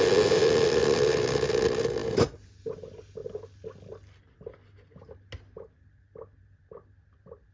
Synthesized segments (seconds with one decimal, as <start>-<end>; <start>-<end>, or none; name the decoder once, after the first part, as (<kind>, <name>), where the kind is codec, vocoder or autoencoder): 2.0-2.7 (vocoder, BigVGAN v2)